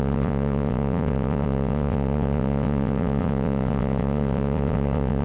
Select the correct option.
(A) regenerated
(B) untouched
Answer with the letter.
A